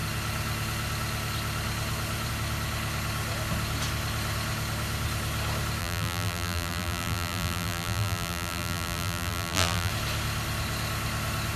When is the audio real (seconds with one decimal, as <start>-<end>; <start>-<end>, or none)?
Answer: 0.0-5.8; 9.9-11.6